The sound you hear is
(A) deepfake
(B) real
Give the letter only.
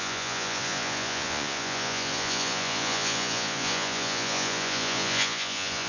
A